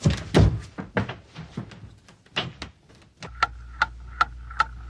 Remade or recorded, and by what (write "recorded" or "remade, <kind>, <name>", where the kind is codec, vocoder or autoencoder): recorded